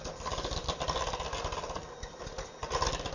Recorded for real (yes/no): yes